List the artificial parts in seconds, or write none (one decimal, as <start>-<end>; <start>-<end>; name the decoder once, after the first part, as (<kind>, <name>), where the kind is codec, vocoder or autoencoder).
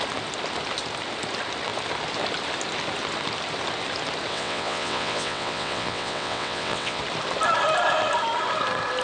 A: 4.3-7.0 (vocoder, WaveNeXt)